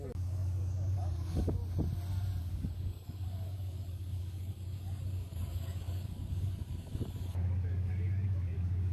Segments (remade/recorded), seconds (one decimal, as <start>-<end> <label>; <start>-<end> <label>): 0.0-1.6 remade; 1.6-2.4 recorded; 2.4-8.9 remade